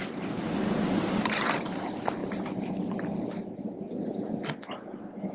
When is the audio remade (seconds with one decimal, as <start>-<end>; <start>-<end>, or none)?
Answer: 2.2-3.5